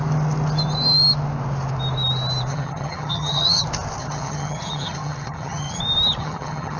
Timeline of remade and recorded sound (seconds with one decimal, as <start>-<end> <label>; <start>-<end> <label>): 0.0-2.5 recorded; 2.5-3.6 remade; 3.6-4.0 recorded; 4.0-5.8 remade; 5.8-6.2 recorded; 6.2-6.8 remade